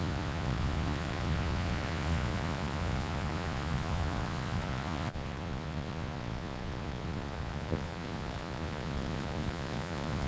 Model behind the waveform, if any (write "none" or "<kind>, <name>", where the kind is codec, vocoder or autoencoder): vocoder, Vocos